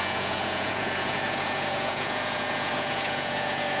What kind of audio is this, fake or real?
fake